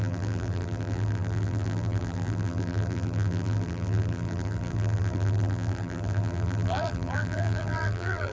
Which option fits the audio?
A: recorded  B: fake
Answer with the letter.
B